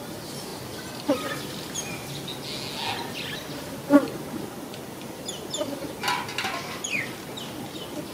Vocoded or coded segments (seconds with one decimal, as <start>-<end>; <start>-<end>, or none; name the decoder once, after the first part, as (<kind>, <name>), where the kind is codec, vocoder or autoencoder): none